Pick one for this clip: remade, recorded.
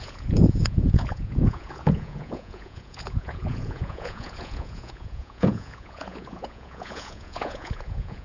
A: remade